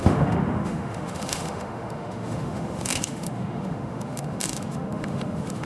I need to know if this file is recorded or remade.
remade